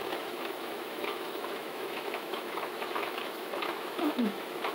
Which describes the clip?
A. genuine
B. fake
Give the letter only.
B